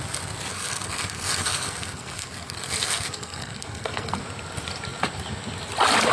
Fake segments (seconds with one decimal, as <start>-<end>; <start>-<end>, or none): 0.5-4.2